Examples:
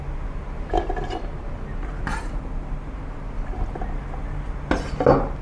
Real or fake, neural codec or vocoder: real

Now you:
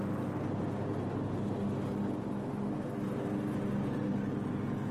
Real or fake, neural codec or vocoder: real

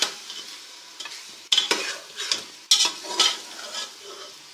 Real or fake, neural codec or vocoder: real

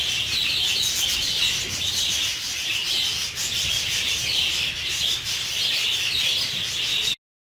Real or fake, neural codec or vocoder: real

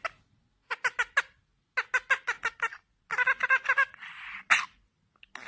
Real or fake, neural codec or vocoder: real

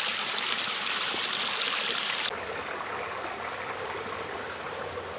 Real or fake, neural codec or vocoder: real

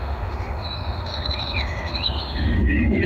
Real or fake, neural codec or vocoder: fake, autoencoder, DAC-VAE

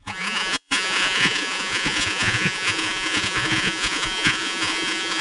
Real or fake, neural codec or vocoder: fake, vocoder, Vocos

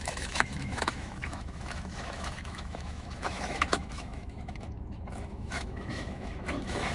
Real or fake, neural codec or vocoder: fake, autoencoder, DAC-VAE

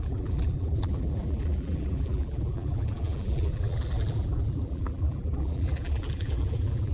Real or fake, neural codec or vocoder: fake, vocoder, BigVGAN v2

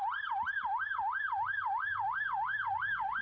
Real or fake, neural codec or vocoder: real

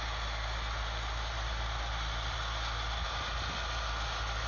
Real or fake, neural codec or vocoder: real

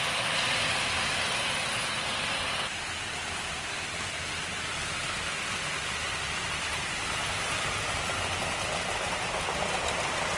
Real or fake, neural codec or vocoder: real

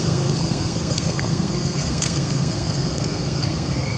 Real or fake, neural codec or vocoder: fake, codec, SNAC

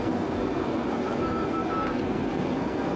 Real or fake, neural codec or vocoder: fake, codec, SNAC